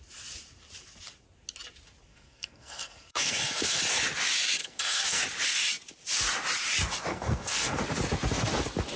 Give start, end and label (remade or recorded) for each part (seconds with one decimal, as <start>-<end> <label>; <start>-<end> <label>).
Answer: 0.0-2.1 recorded; 2.1-3.8 remade; 3.8-4.6 recorded; 4.6-5.2 remade; 5.2-7.1 recorded; 7.1-7.8 remade; 7.8-9.0 recorded